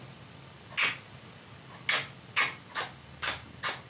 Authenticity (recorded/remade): recorded